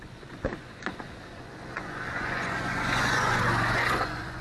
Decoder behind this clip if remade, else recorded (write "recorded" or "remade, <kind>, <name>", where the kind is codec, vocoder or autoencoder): remade, vocoder, Vocos